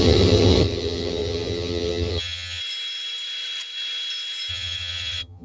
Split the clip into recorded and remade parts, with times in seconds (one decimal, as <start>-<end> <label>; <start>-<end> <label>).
0.0-2.6 remade; 2.6-4.5 recorded; 4.5-5.4 remade